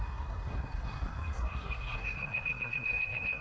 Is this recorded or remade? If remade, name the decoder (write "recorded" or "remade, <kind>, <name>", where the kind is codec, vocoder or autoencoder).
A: remade, codec, SNAC